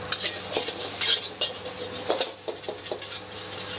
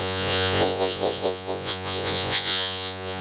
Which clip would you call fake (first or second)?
second